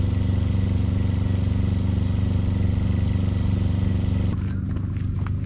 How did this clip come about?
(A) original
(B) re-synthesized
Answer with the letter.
A